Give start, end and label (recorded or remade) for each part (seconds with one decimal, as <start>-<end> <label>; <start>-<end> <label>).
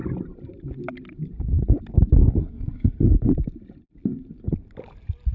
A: 0.0-2.4 recorded; 2.4-3.0 remade; 3.0-5.3 recorded